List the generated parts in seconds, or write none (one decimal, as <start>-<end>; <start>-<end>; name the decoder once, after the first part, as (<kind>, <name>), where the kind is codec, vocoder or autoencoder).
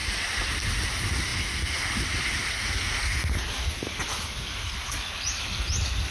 none